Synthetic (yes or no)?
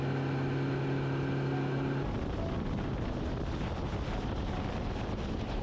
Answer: no